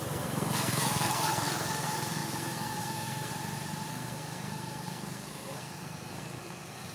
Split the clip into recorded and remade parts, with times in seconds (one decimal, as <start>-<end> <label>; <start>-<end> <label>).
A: 0.0-3.3 remade; 3.3-3.9 recorded; 3.9-6.9 remade